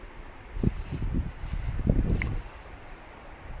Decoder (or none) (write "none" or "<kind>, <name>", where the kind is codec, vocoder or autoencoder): none